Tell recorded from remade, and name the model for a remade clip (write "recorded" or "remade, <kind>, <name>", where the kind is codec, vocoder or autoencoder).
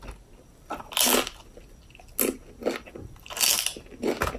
recorded